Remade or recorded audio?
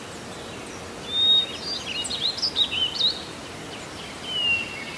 recorded